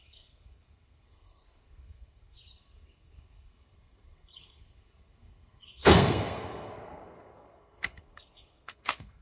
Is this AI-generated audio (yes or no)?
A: yes